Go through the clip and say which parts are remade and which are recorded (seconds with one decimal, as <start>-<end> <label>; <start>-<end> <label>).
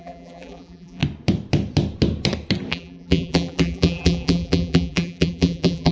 0.0-1.0 remade; 1.0-2.7 recorded; 2.7-5.9 remade